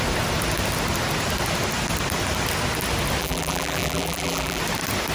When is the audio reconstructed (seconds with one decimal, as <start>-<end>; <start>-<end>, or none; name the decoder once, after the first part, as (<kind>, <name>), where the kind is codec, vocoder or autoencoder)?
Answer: 3.2-4.6 (vocoder, BigVGAN v2)